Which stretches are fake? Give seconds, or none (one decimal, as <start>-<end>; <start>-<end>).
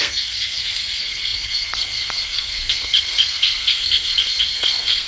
0.0-5.1